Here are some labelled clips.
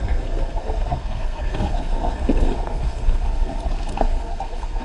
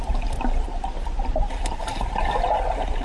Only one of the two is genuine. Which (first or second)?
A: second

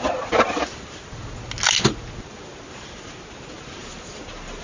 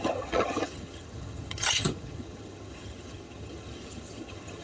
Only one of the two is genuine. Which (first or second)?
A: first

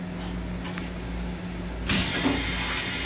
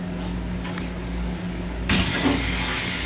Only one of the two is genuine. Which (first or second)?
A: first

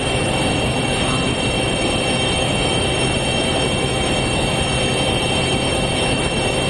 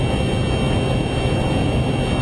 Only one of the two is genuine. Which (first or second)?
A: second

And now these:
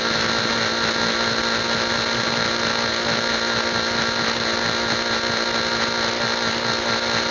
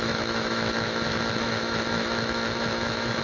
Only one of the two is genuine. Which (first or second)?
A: first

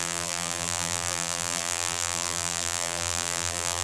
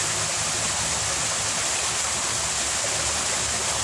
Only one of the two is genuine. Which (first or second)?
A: second